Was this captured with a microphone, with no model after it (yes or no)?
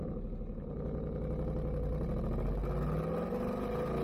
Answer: yes